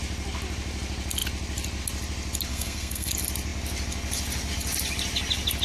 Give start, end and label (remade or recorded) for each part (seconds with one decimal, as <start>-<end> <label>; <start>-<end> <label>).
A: 0.0-2.5 recorded; 2.5-3.1 remade; 3.1-5.6 recorded